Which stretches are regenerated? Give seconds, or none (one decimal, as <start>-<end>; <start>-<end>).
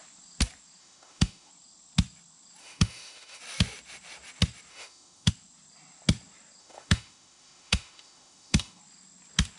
0.8-1.5; 2.6-3.4; 4.7-5.3; 6.6-8.8